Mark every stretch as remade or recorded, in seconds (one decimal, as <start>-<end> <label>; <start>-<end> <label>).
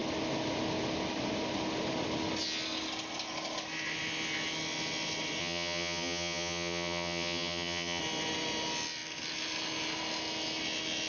0.0-5.4 recorded; 5.4-8.0 remade; 8.0-11.1 recorded